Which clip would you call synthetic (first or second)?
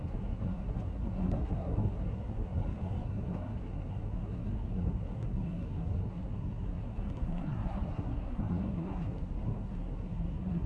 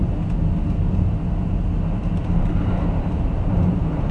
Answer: first